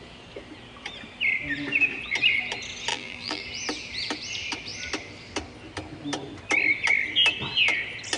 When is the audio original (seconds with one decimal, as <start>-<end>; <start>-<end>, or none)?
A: 0.0-2.9; 3.4-8.2